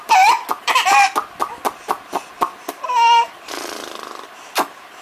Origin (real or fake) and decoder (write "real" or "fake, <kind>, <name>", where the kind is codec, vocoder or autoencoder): fake, vocoder, BigVGAN v2